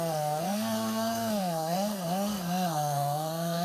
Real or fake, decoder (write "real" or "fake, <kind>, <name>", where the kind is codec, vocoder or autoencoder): fake, codec, SNAC